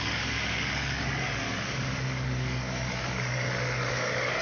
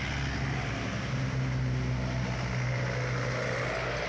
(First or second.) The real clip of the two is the second